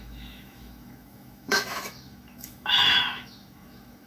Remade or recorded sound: remade